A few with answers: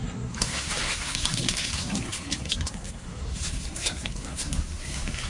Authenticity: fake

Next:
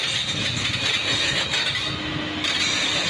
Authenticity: real